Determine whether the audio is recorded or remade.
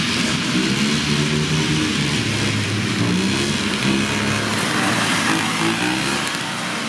recorded